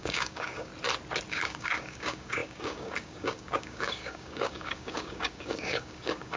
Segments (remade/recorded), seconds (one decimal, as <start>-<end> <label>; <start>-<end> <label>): 0.0-0.7 remade; 0.7-1.3 recorded; 1.3-6.4 remade